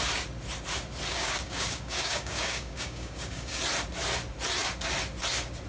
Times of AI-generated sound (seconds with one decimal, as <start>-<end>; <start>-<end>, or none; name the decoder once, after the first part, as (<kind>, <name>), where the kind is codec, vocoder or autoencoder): 1.1-3.6 (codec, DAC)

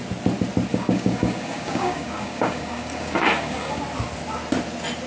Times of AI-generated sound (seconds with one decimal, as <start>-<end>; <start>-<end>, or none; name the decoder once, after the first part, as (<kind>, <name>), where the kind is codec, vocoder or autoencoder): 0.7-3.8 (codec, DAC)

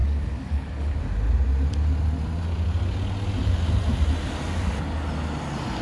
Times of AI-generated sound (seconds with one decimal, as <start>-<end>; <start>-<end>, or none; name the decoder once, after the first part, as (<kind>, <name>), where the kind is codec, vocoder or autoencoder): 0.0-1.0 (codec, DAC)

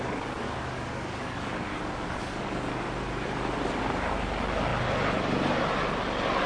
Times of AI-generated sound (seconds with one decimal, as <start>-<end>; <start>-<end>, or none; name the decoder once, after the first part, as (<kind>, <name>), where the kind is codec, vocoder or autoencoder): 0.0-2.5 (codec, DAC)